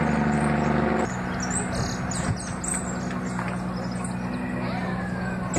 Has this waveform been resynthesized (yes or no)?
no